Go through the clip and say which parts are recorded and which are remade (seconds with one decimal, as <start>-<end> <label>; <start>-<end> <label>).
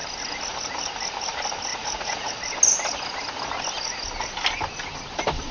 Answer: 0.0-1.7 recorded; 1.7-2.3 remade; 2.3-5.5 recorded